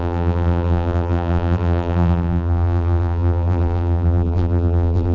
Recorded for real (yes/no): no